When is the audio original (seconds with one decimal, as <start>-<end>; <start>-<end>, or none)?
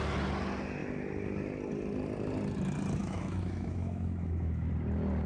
0.0-3.0; 4.7-5.3